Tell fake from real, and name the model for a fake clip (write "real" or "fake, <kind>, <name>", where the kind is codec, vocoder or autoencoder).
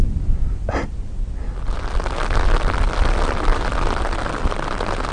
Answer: real